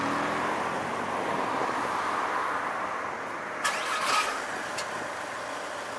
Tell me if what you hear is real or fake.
real